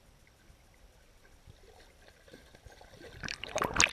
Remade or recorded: remade